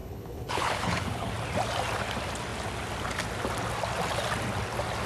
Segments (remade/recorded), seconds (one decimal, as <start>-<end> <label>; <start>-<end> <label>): 0.0-1.3 remade; 1.3-5.1 recorded